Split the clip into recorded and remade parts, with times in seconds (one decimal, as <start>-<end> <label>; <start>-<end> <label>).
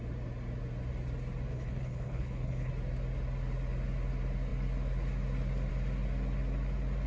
0.0-1.5 recorded; 1.5-2.7 remade; 2.7-7.1 recorded